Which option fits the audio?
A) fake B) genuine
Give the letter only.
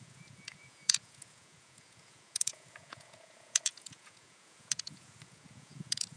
A